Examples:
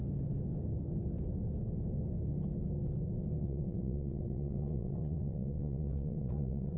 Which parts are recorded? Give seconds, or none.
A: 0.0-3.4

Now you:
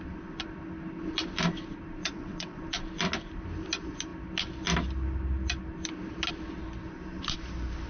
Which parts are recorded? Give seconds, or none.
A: 0.0-2.0; 2.6-7.9

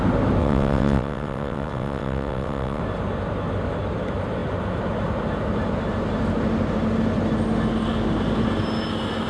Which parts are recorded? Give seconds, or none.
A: 0.0-0.4; 2.8-9.3

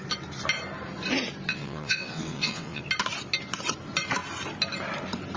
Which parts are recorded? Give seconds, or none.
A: 0.0-1.5; 2.8-5.4

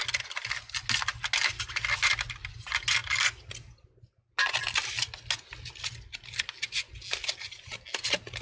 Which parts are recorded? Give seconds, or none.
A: 0.0-8.4